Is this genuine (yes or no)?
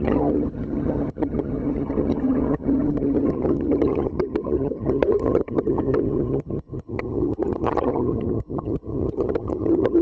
no